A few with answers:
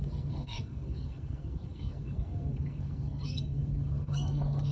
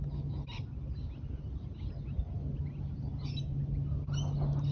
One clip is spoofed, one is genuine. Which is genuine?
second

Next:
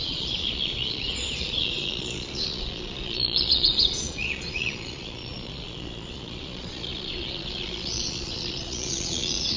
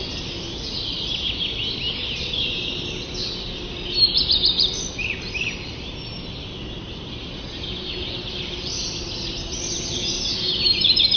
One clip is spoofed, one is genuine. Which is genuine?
second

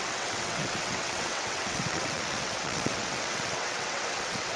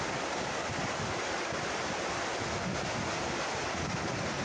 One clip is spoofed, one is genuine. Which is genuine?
second